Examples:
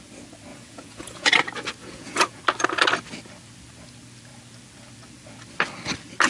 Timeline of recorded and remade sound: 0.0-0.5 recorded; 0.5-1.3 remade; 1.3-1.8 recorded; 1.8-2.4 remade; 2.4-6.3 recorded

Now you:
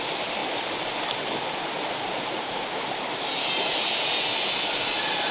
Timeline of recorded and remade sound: 0.0-5.3 recorded

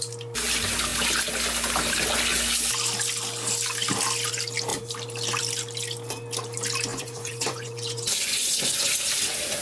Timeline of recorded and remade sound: 0.0-6.9 recorded; 6.9-9.0 remade; 9.0-9.6 recorded

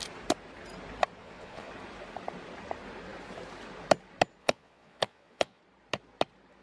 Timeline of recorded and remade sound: 0.0-1.2 recorded; 1.2-1.7 remade; 1.7-4.4 recorded; 4.4-5.6 remade; 5.6-6.6 recorded

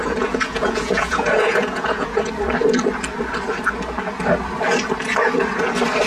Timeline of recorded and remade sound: 0.0-2.3 remade; 2.3-6.1 recorded